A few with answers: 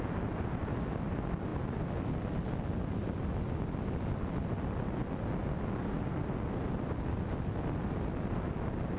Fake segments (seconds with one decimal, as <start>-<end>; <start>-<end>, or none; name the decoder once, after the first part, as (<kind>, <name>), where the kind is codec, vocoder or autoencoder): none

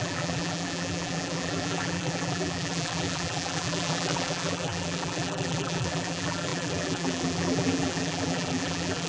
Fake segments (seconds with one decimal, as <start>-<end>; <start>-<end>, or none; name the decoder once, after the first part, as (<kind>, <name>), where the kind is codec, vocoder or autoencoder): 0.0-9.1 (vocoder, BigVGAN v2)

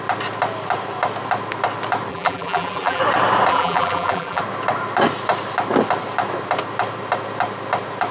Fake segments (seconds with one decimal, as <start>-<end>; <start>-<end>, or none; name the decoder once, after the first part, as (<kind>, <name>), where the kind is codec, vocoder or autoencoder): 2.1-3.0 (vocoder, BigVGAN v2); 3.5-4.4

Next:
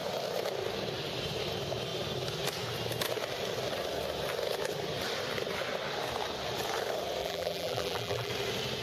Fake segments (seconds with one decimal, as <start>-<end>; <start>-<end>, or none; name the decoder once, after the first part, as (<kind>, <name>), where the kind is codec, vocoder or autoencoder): 7.2-8.3 (vocoder, BigVGAN v2)

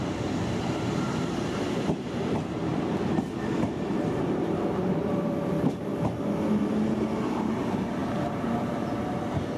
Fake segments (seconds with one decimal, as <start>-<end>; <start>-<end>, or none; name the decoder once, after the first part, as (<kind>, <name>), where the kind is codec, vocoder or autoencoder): 0.0-2.7 (vocoder, BigVGAN v2); 3.6-5.9; 7.3-9.6

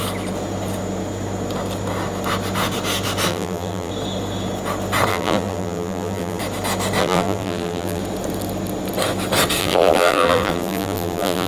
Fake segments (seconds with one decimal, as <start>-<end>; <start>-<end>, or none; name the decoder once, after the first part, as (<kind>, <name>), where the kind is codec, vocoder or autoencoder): 3.3-3.9 (vocoder, BigVGAN v2); 5.1-6.4; 7.0-8.0; 9.6-11.5